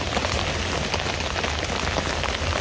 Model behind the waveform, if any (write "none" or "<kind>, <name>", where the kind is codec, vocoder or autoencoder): none